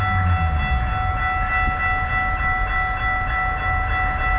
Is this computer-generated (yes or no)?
no